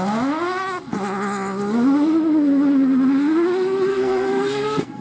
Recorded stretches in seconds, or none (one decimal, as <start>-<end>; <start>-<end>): 0.0-3.9